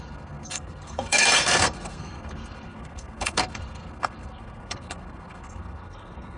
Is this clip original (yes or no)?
no